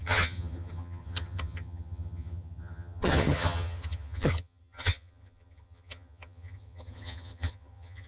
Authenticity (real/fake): fake